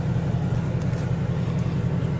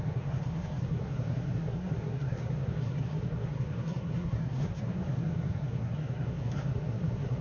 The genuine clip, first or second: first